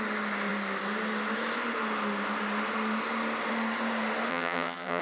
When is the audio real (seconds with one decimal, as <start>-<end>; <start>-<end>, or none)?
0.0-4.3

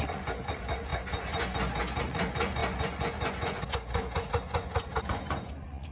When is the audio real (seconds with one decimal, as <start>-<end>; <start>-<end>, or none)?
none